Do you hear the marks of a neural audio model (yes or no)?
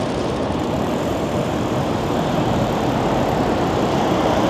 yes